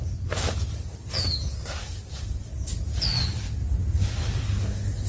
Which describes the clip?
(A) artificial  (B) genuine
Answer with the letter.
B